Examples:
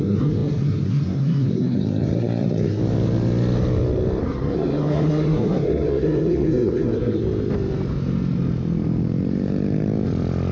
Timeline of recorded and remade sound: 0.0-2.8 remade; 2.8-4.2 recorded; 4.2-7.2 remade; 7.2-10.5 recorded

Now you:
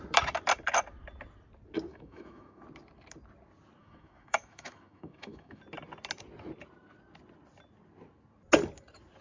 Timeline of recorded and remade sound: 0.0-1.9 recorded; 1.9-2.6 remade; 2.6-3.8 recorded; 3.8-5.6 remade; 5.6-9.2 recorded

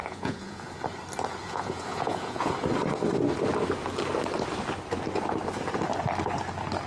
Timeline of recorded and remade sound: 0.0-0.8 remade; 0.8-1.4 recorded; 1.4-2.5 remade; 2.5-6.9 recorded